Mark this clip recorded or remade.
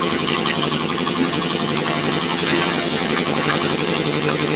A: remade